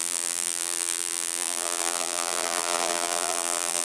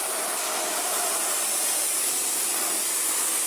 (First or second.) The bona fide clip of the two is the second